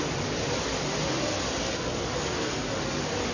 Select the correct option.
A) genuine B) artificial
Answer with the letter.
A